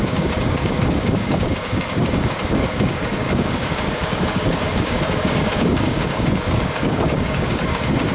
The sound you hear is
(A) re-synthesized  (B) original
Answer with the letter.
A